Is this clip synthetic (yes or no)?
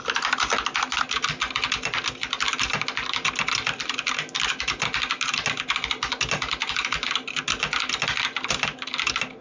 no